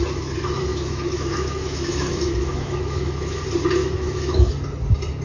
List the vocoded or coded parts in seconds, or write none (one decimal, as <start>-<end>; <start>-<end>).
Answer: 0.7-3.4; 3.8-4.5

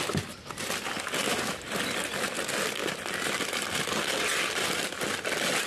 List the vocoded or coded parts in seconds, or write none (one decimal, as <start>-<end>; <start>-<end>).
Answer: none

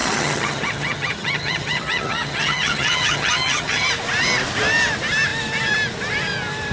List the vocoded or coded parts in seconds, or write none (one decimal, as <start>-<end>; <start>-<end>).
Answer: 0.0-3.9

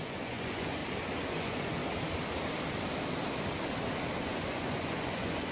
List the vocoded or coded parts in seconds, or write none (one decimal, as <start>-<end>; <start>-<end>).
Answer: 0.0-0.8; 1.3-1.8; 4.2-5.5

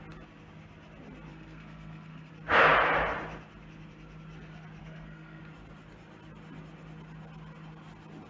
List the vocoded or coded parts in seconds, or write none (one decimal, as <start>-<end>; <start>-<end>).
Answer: 1.3-2.3; 4.8-5.4